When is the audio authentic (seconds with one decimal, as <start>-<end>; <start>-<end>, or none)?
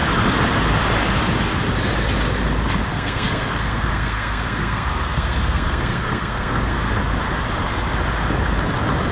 0.0-2.9; 6.9-9.1